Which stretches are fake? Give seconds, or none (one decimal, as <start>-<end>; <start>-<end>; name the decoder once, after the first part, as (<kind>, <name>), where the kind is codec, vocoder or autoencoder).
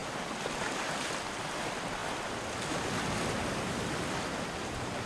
none